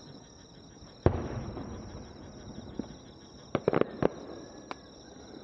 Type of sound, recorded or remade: recorded